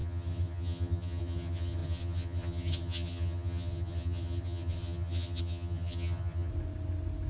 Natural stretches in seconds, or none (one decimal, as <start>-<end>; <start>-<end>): 6.5-7.3